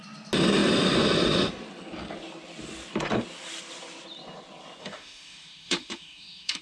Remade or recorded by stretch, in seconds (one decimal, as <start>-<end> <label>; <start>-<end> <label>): 0.0-4.8 recorded; 4.8-6.6 remade